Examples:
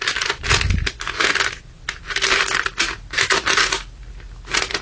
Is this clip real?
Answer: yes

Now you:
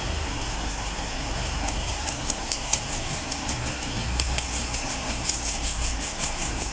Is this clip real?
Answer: no